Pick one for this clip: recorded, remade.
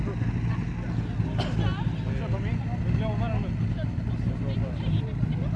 recorded